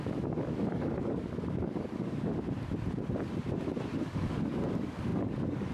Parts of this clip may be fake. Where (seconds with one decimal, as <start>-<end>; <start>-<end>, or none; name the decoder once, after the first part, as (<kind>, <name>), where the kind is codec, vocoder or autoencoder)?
0.0-2.3 (codec, DAC); 4.0-5.7